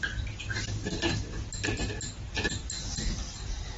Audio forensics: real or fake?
real